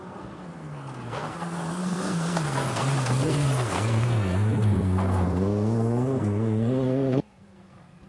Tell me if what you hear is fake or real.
fake